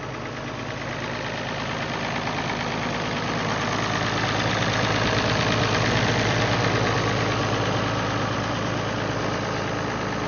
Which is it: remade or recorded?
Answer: recorded